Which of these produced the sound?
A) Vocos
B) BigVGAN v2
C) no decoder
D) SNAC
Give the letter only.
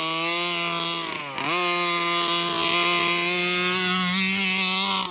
C